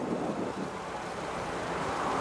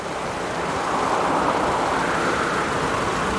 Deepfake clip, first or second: second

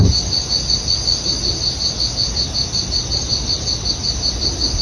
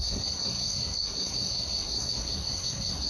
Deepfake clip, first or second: second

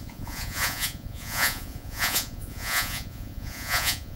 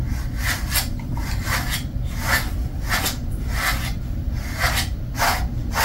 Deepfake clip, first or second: first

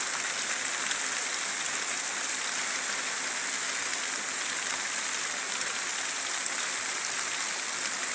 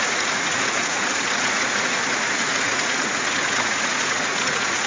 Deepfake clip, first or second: second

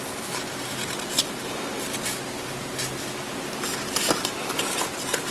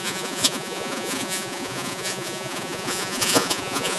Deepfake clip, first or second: second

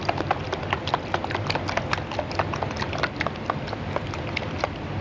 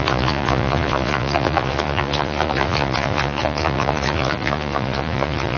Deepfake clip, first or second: second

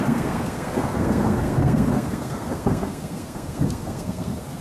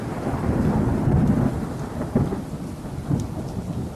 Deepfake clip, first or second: first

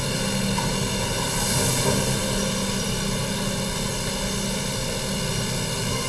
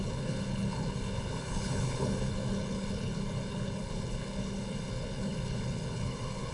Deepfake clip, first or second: second